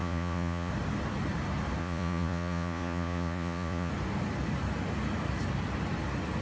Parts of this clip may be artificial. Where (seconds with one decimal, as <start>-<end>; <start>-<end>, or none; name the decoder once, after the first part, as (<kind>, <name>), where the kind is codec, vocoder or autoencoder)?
0.0-0.7 (vocoder, Vocos); 1.8-3.9